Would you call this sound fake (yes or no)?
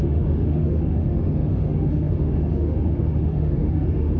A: yes